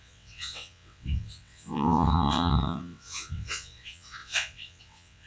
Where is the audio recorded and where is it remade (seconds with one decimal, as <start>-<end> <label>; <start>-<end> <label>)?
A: 0.0-5.3 remade